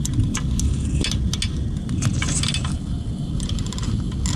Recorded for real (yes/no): yes